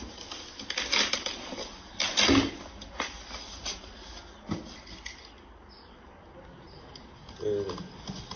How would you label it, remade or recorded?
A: recorded